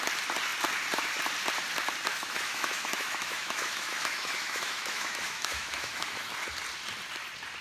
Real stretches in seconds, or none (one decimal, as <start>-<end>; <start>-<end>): 0.0-2.1; 6.3-7.6